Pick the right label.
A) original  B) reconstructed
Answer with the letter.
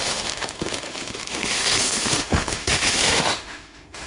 B